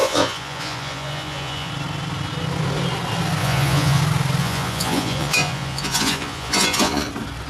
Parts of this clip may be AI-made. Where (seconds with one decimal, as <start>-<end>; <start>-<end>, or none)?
0.0-1.7; 3.4-4.0; 4.4-7.1